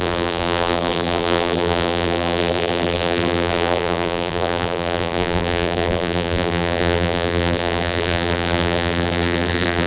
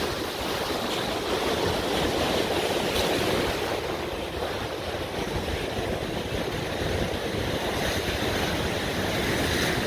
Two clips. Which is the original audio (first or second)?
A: second